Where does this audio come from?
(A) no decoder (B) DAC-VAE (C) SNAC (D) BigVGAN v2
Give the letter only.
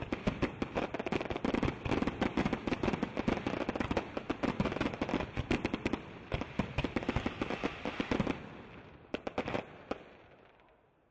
D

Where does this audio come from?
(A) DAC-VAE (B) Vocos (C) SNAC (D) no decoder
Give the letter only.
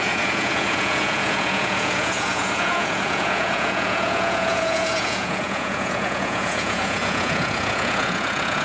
B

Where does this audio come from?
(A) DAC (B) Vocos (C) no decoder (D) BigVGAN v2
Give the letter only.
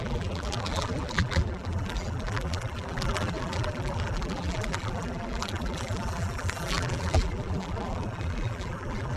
D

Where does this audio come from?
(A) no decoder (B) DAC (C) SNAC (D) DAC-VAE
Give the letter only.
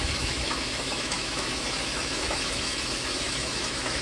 D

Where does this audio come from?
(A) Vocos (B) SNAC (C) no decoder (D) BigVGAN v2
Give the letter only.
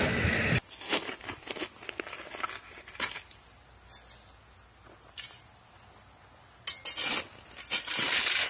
C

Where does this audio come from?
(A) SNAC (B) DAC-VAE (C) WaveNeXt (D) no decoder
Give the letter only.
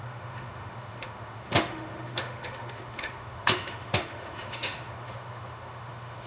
B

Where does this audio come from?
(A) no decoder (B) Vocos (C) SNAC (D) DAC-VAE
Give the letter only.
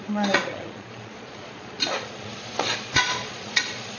B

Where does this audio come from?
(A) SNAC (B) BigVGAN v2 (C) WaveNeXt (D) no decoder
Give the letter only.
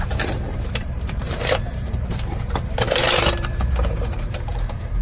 B